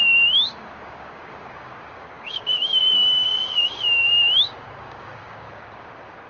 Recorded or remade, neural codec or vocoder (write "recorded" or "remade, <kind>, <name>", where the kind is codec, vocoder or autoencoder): remade, codec, DAC